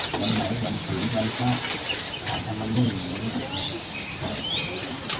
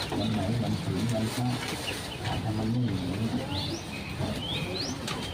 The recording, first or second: second